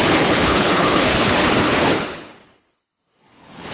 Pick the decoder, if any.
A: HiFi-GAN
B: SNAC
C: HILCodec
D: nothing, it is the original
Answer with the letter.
C